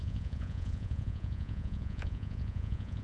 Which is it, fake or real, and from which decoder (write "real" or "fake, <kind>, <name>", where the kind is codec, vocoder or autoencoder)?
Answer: fake, vocoder, Vocos